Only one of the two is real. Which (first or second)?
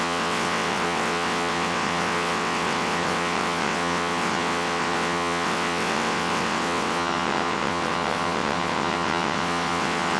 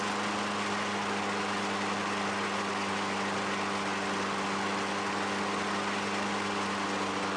second